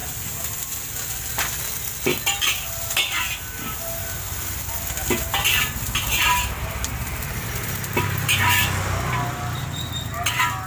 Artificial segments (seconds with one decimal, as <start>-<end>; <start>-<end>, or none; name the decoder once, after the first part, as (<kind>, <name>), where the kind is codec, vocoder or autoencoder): 0.0-1.7 (vocoder, BigVGAN v2)